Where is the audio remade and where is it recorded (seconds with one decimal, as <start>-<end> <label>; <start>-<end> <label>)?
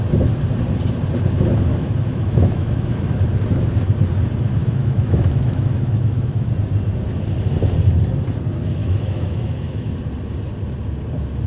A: 0.0-1.7 recorded; 1.7-3.0 remade; 3.0-4.6 recorded; 4.6-6.5 remade; 6.5-8.8 recorded; 8.8-9.9 remade; 9.9-11.5 recorded